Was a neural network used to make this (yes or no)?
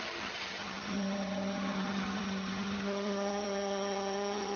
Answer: yes